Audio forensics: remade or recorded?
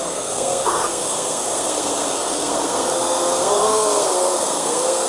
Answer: remade